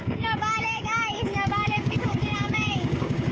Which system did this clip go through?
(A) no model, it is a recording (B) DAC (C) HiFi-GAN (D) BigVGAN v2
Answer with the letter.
B